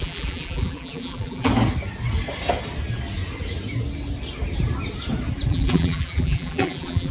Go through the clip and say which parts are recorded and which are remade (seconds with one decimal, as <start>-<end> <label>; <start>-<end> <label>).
0.0-1.5 remade; 1.5-5.5 recorded; 5.5-7.1 remade